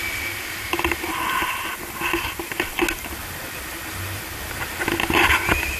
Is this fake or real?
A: real